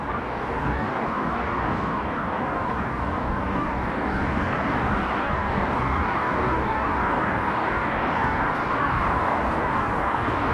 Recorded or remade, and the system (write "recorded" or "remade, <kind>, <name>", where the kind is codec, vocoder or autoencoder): remade, codec, DAC